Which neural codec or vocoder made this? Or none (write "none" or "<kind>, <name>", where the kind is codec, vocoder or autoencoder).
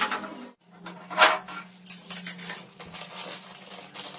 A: none